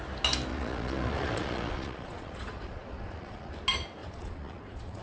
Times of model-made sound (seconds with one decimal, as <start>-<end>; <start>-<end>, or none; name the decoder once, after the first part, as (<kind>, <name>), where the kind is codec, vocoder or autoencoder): 0.5-3.5 (vocoder, Vocos); 4.0-5.0